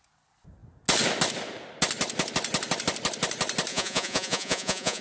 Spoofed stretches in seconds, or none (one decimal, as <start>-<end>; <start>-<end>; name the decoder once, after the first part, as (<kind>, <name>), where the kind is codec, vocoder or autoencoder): 3.7-5.0 (vocoder, Vocos)